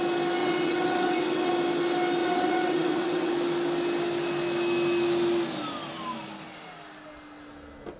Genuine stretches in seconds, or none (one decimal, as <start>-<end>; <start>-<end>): 0.0-0.4; 1.5-2.2; 3.3-8.0